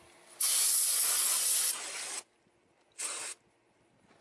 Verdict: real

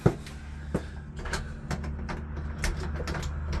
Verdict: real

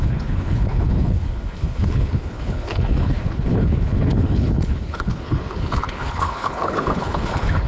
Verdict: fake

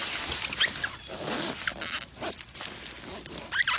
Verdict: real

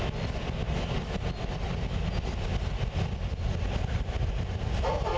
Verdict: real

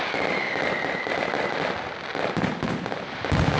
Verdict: real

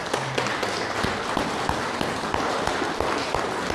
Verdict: real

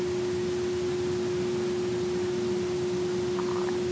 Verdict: real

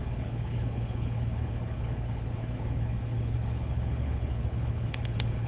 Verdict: fake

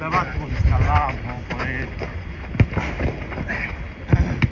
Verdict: real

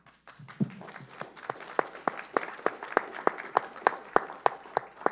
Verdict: real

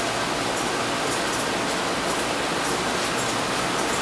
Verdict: real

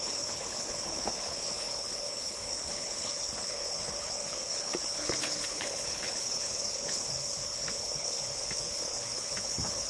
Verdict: fake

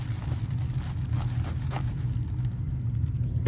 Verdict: real